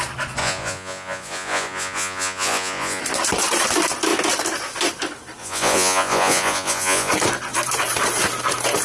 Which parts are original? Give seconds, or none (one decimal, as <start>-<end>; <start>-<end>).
0.0-0.4; 3.0-5.4; 7.1-8.8

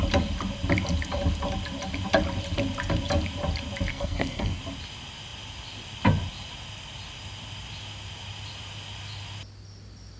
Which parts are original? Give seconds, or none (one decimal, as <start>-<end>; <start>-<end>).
0.0-3.9; 4.6-10.2

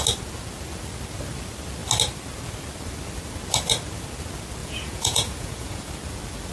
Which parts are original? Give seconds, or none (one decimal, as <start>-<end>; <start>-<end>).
0.0-4.6; 5.9-6.5

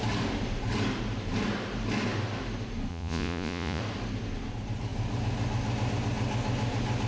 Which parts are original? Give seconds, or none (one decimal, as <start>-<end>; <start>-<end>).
0.0-2.9; 3.8-7.1